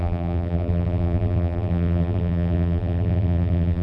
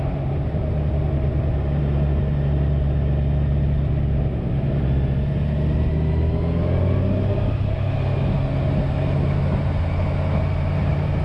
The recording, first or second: second